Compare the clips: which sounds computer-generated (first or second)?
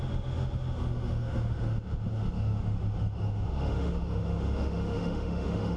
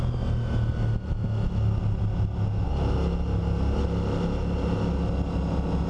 first